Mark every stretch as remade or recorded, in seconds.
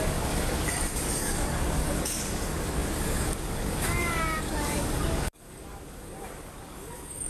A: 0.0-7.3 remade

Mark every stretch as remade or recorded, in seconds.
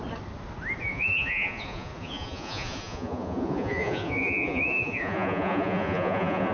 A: 0.0-0.8 recorded; 0.8-6.5 remade